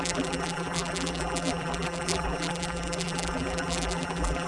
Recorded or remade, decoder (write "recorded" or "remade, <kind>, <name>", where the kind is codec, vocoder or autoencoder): remade, vocoder, BigVGAN v2